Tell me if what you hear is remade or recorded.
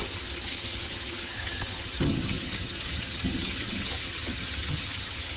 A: remade